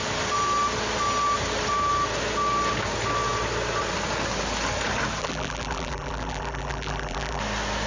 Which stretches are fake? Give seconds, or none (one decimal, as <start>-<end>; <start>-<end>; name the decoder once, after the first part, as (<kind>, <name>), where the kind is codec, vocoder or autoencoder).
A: 5.2-7.4 (vocoder, BigVGAN v2)